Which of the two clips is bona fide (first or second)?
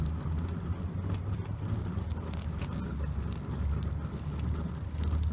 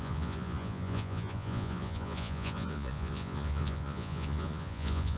first